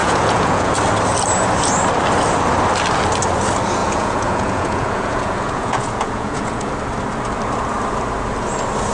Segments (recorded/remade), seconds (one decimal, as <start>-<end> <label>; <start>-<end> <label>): 0.0-0.7 remade; 0.7-3.8 recorded; 3.8-6.7 remade; 6.7-8.9 recorded